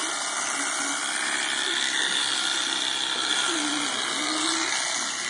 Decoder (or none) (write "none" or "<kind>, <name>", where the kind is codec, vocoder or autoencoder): none